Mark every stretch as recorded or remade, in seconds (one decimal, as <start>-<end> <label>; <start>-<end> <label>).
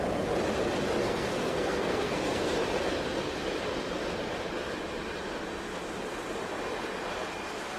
0.0-1.0 recorded; 1.0-2.5 remade; 2.5-7.8 recorded